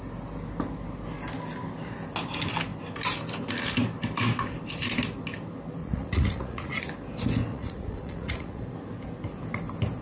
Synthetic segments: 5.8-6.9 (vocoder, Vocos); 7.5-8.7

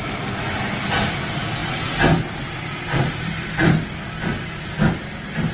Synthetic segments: none

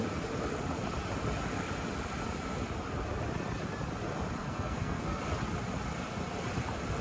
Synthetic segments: 4.4-5.2 (codec, SNAC)